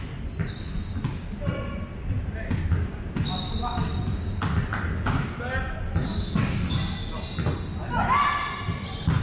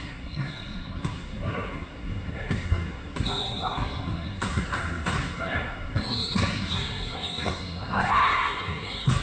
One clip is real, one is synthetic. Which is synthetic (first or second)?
second